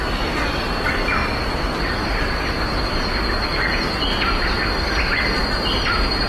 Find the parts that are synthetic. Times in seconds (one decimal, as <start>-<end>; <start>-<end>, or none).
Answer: none